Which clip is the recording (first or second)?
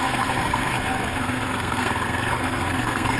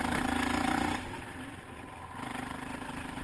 second